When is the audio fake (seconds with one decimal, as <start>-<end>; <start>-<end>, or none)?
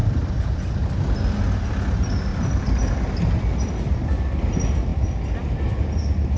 0.0-1.0; 2.3-3.0